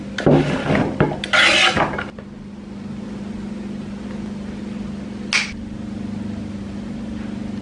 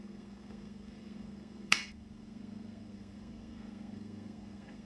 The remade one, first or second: second